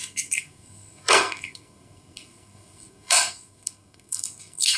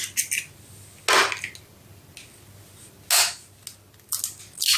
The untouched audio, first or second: second